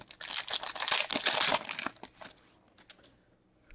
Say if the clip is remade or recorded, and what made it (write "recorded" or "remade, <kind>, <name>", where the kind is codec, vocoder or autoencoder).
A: recorded